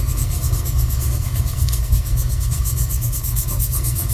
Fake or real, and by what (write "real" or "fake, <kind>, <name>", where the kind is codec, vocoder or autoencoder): fake, codec, SNAC